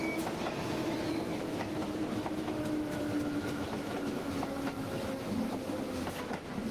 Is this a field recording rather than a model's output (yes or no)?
no